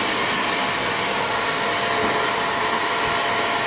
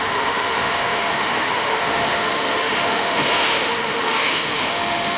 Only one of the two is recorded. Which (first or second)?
first